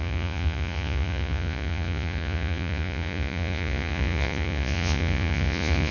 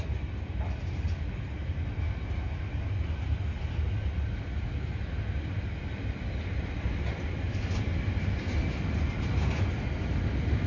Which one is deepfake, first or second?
first